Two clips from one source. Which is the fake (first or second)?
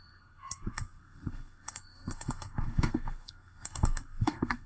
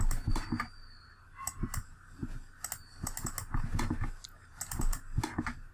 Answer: first